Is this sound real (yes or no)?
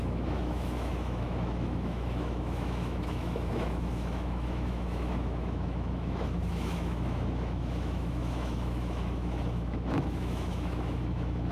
no